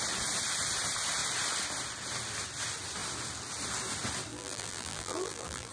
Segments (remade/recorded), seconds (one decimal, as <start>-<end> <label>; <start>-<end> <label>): 0.0-4.3 recorded; 4.3-5.7 remade